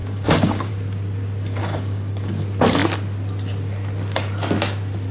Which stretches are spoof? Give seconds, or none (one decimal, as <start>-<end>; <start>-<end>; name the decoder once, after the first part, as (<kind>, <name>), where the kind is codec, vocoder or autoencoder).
0.0-0.7 (codec, DAC); 1.6-2.4